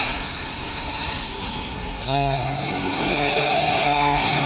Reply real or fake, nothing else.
fake